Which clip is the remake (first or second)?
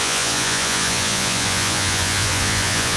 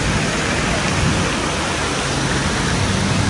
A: first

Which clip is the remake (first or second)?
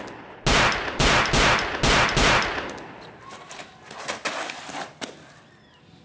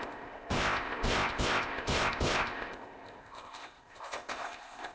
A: second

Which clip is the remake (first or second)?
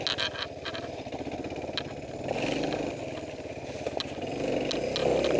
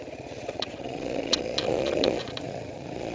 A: second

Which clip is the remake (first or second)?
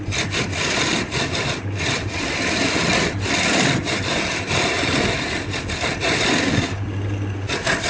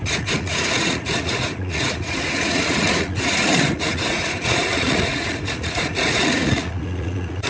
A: second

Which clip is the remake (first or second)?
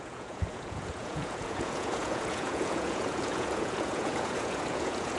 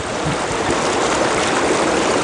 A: first